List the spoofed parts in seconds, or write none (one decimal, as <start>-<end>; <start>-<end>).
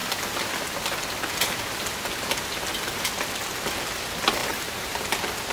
4.4-5.1